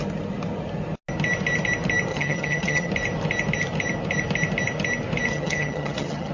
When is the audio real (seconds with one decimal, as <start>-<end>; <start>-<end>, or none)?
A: 0.0-2.1; 2.9-5.3